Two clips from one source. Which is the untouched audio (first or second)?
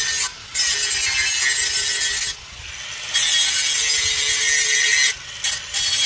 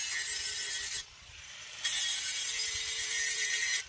first